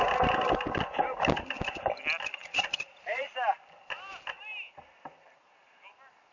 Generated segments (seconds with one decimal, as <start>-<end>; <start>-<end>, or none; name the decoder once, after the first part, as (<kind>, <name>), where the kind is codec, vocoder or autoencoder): 2.4-3.3 (vocoder, Vocos)